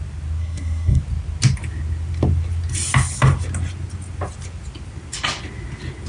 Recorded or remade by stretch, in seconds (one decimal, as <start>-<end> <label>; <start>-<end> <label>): 0.0-0.4 recorded; 0.4-1.0 remade; 1.0-6.1 recorded